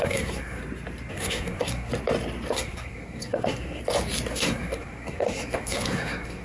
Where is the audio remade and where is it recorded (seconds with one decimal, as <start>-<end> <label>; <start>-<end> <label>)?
0.0-0.6 remade; 0.6-1.1 recorded; 1.1-1.9 remade; 1.9-2.5 recorded; 2.5-3.8 remade; 3.8-4.3 recorded; 4.3-6.4 remade